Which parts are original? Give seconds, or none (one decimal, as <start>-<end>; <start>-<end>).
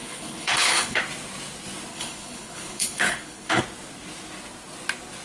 1.0-1.9; 3.6-5.2